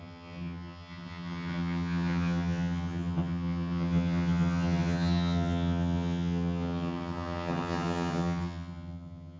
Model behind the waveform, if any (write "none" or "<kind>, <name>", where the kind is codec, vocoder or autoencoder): vocoder, HiFi-GAN